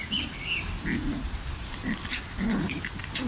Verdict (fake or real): real